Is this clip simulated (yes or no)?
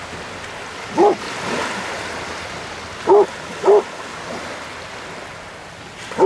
no